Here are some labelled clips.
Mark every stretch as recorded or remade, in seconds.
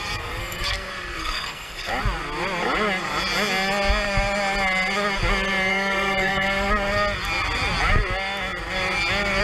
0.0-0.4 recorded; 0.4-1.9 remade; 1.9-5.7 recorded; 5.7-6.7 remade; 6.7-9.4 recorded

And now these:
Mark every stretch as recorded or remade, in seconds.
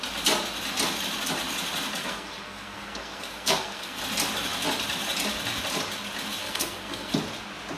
0.0-2.0 recorded; 2.0-4.0 remade; 4.0-6.4 recorded; 6.4-7.1 remade; 7.1-7.8 recorded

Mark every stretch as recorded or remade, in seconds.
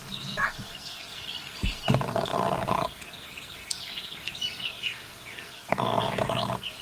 0.0-6.8 remade